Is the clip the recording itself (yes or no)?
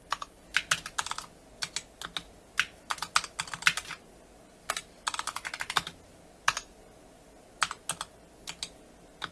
yes